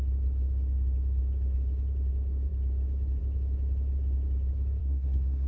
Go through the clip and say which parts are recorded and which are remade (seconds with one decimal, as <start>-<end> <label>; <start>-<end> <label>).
0.0-4.8 recorded; 4.8-5.5 remade